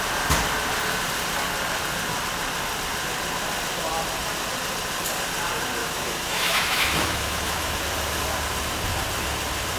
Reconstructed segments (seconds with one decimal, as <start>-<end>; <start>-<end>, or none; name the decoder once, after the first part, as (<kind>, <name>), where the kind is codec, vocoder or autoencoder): 5.8-7.8 (autoencoder, DAC-VAE)

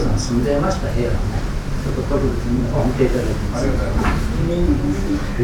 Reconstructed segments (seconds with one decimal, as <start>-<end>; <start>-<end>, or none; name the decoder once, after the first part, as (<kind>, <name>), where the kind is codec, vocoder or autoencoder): 1.1-2.6 (vocoder, BigVGAN v2); 3.1-4.5

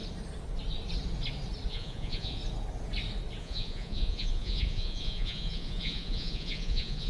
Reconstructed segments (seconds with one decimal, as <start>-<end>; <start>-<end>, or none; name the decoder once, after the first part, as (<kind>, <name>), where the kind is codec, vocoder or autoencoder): 1.7-2.4 (vocoder, Vocos); 3.4-7.1

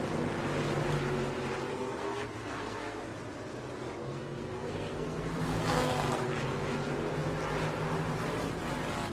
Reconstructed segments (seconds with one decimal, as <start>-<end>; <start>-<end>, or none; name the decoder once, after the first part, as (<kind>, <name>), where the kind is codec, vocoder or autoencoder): 1.7-3.0 (codec, SNAC); 4.0-6.4

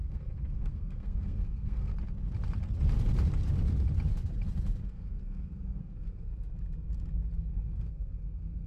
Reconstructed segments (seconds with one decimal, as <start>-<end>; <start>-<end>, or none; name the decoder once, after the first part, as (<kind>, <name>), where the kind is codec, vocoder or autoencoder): 0.0-1.9 (codec, SNAC); 4.9-6.3; 7.5-8.7

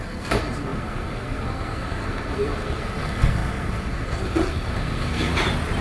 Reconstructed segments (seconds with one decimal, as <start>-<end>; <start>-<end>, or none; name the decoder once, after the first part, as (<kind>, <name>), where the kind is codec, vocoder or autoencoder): 0.0-5.3 (codec, SNAC)